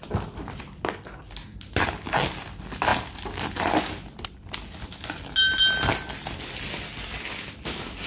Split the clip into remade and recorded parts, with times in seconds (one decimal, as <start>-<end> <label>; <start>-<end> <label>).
0.0-8.1 recorded